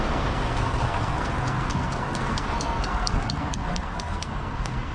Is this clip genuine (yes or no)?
no